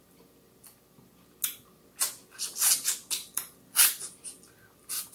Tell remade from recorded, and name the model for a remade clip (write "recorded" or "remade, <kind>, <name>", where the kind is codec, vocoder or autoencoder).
recorded